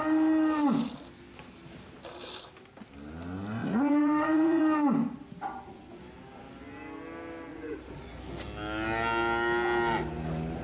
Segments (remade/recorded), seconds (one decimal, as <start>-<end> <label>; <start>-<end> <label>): 0.0-3.6 recorded; 3.6-4.6 remade; 4.6-7.5 recorded; 7.5-8.2 remade; 8.2-10.6 recorded